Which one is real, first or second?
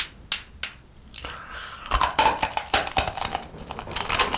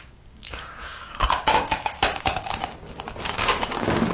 first